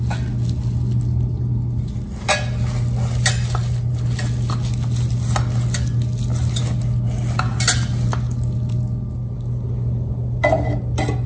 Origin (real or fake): real